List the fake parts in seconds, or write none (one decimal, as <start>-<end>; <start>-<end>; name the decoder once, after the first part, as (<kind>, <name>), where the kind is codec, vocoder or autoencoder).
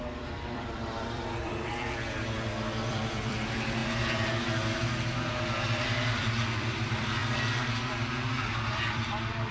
0.0-3.8 (vocoder, BigVGAN v2); 5.3-7.2; 8.9-9.5